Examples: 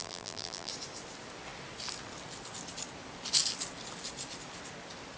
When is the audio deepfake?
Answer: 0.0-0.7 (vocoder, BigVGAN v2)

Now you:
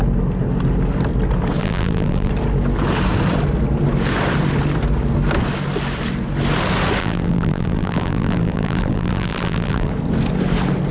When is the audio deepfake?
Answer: 1.6-2.3 (vocoder, BigVGAN v2); 7.0-9.9

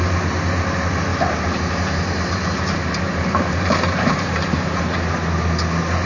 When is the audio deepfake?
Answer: 1.1-4.8 (vocoder, BigVGAN v2)

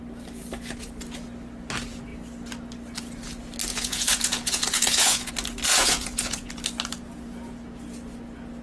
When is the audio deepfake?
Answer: 3.7-5.3 (vocoder, Vocos); 5.7-6.5

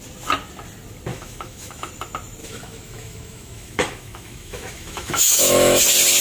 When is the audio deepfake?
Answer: 1.1-1.9 (autoencoder, DAC-VAE); 2.4-5.8

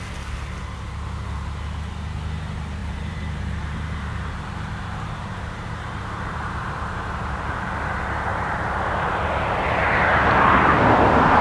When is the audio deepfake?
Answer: 2.8-7.8 (vocoder, BigVGAN v2); 8.3-9.3

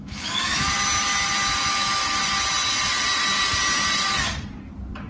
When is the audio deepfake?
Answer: 0.0-0.7 (autoencoder, DAC-VAE); 1.6-2.0